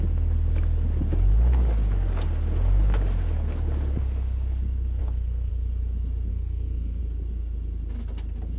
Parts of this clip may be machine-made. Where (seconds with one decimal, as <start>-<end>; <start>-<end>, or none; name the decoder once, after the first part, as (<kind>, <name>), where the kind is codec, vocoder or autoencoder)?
5.0-5.5 (codec, SNAC); 6.3-7.0